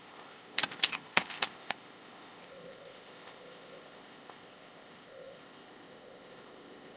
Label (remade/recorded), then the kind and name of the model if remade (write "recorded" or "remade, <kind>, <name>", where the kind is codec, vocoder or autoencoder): remade, codec, ZipCodec